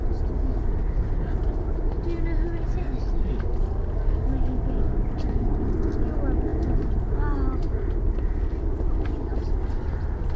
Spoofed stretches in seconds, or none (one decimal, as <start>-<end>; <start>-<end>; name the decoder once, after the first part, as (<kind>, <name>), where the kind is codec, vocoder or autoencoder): 2.7-3.5 (vocoder, BigVGAN v2)